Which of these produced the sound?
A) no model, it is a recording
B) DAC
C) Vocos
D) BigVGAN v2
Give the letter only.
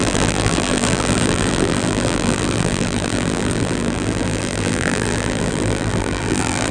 D